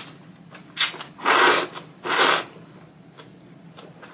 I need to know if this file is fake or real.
real